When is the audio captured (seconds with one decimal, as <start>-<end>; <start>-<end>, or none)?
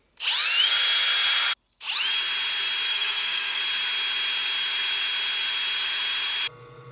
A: 0.0-2.9; 3.6-6.9